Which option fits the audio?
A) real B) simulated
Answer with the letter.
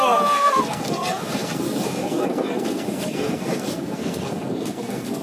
B